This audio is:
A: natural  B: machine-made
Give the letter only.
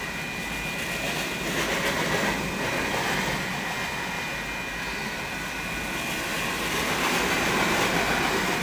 A